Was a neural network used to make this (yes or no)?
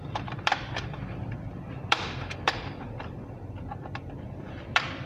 yes